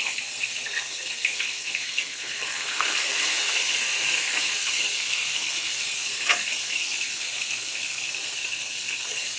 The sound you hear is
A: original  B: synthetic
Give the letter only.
B